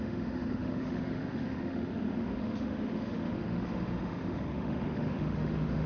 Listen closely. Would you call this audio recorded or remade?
remade